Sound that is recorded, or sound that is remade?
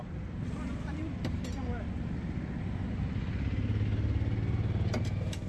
recorded